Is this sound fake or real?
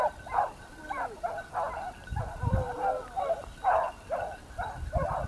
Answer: real